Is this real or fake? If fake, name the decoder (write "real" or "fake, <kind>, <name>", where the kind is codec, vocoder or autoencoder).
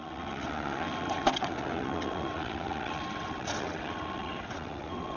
fake, vocoder, WaveNeXt